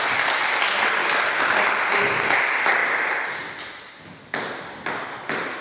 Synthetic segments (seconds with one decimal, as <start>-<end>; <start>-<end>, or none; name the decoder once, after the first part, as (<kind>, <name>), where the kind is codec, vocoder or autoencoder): 1.0-1.6 (codec, DAC)